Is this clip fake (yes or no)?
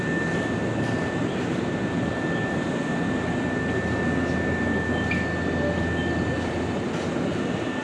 no